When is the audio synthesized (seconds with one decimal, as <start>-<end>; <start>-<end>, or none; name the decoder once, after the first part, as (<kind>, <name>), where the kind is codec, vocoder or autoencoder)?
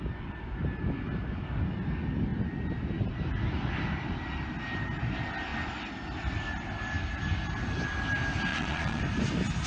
8.5-9.0 (vocoder, Vocos)